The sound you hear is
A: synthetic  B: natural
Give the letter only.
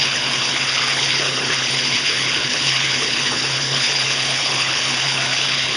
A